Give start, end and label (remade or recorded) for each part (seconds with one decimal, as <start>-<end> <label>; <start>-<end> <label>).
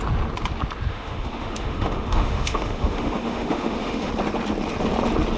0.0-0.9 recorded; 0.9-4.1 remade; 4.1-5.4 recorded